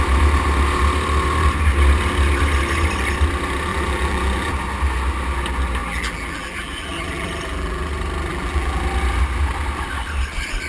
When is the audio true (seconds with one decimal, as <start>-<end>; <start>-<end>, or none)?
0.0-3.7; 4.5-5.8; 7.9-8.3; 8.8-10.7